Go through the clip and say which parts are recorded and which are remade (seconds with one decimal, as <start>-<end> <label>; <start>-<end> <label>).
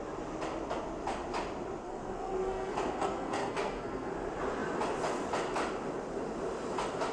0.0-1.8 recorded; 1.8-4.1 remade; 4.1-7.1 recorded